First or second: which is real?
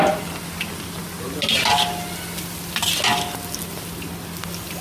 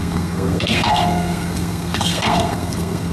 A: first